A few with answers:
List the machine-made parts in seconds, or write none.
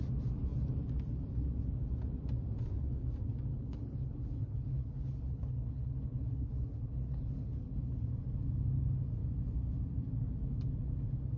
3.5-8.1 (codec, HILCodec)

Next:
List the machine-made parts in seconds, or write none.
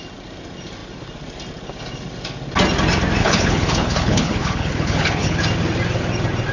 3.2-5.4 (codec, HILCodec)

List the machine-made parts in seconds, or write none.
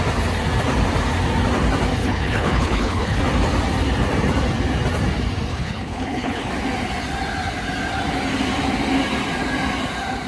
2.0-3.2 (codec, HILCodec); 5.5-6.5